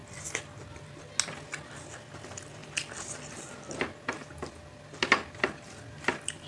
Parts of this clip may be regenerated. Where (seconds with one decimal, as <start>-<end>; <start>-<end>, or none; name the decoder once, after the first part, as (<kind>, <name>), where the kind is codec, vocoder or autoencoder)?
0.0-1.0 (vocoder, BigVGAN v2); 2.6-3.6